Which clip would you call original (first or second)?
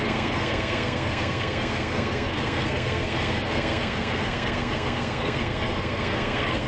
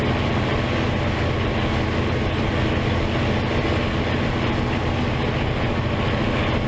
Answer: second